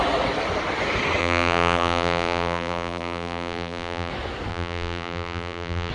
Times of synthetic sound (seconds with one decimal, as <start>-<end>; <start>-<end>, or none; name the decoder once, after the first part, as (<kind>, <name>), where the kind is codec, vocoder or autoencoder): 1.2-4.1 (vocoder, BigVGAN v2); 4.5-5.9